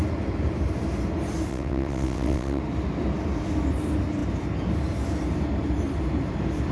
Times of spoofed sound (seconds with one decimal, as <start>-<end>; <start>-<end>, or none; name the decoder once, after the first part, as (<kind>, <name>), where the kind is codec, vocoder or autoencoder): 1.5-2.6 (vocoder, WaveNeXt)